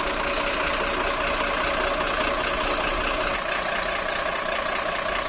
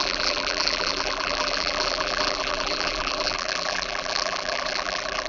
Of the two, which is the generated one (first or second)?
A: second